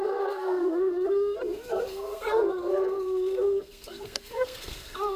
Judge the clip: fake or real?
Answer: fake